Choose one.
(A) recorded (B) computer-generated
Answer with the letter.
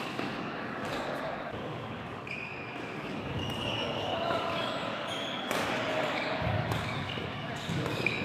B